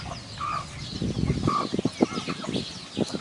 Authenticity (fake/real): real